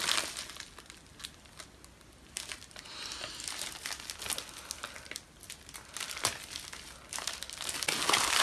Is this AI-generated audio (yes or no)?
no